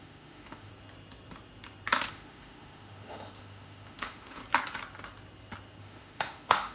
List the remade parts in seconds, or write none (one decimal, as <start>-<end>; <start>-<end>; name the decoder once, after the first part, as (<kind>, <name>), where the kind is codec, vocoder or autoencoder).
0.0-0.7 (autoencoder, DAC-VAE); 2.1-4.4; 5.8-6.7